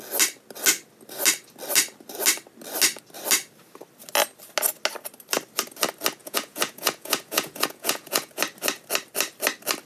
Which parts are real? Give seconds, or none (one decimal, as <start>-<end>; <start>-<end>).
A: 0.0-6.2; 8.4-9.9